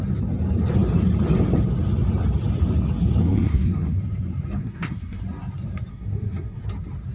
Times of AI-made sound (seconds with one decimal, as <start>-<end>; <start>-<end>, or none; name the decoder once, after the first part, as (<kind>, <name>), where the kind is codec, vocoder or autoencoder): 3.2-4.0 (codec, SNAC); 4.6-5.2; 5.9-6.6